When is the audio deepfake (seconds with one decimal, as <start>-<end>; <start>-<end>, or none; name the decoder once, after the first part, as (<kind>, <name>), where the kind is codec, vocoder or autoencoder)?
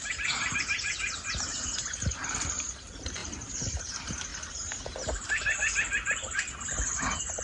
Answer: 3.2-3.9 (vocoder, BigVGAN v2)